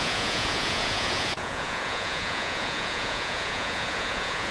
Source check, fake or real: fake